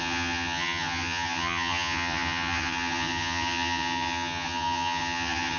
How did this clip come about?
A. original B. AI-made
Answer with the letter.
B